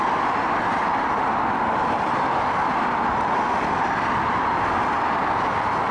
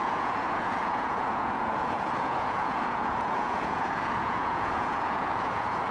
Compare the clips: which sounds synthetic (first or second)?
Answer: second